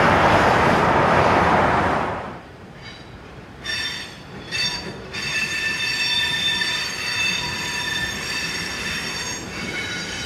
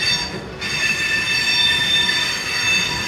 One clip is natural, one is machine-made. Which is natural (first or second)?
second